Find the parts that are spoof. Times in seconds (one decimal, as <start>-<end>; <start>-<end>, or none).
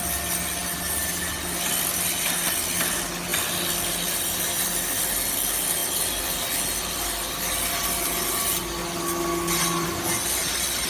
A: none